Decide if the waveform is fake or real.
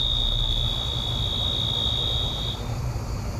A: real